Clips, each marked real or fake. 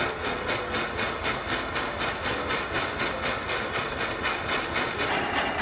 real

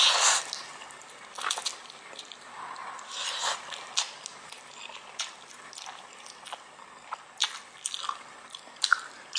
real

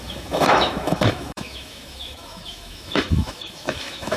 fake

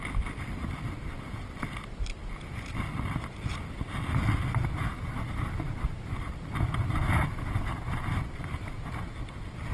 real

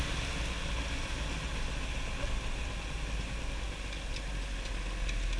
real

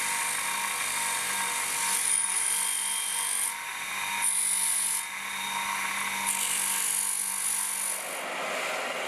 real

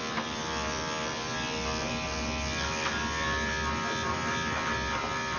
real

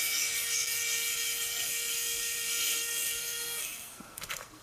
fake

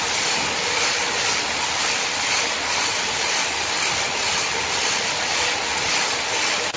real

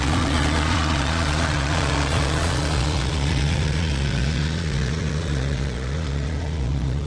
fake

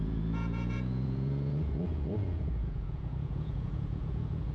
fake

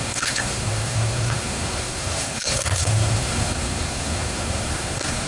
fake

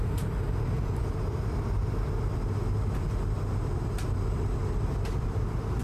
real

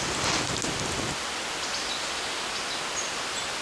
real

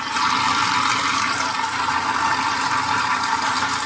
real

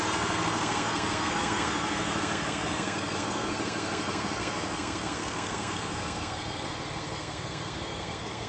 fake